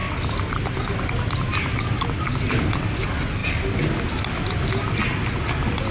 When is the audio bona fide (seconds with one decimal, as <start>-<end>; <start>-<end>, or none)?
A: 0.0-5.9